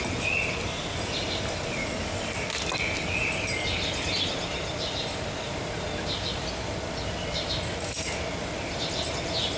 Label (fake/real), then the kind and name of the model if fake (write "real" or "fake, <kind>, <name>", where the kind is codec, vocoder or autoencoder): real